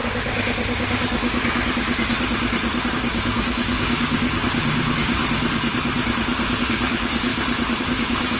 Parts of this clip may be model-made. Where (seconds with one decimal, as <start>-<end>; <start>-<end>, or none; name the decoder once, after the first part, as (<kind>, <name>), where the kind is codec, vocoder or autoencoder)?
2.9-5.2 (codec, DAC); 6.6-7.3; 7.8-8.4